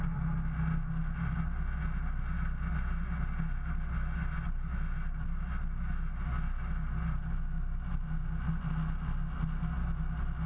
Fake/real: real